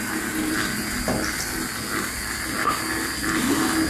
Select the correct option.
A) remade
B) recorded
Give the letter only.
B